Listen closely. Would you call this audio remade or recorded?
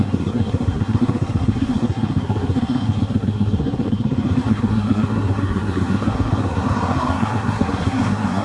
remade